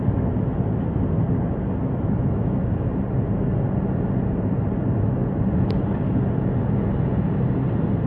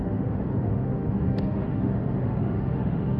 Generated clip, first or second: second